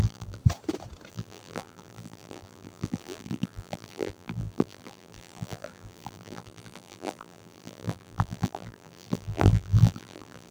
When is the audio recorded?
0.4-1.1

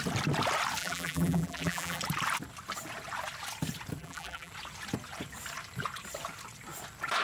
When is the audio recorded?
0.0-0.8; 2.0-4.0; 4.5-7.2

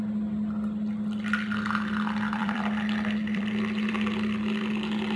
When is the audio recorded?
0.0-2.4; 3.9-5.2

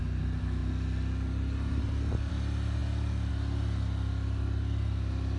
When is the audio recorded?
0.0-5.4

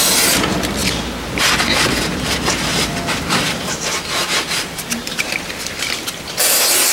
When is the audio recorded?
0.0-2.7

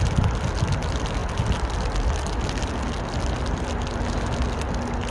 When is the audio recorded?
0.0-5.1

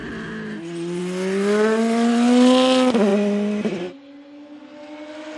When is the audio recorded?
0.0-3.1; 3.8-5.4

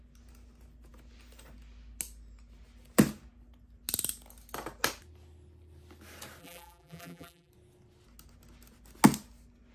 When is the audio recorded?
0.0-6.4; 7.5-9.7